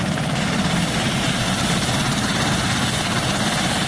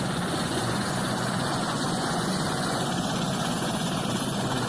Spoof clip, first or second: second